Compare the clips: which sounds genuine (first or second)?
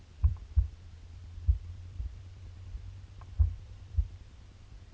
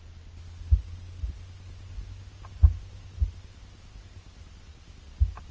second